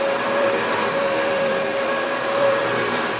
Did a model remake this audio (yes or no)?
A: yes